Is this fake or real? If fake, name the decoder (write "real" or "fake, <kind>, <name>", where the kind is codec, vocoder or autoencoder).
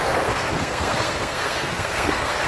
fake, codec, SNAC